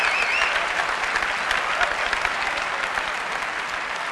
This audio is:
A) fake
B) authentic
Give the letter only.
B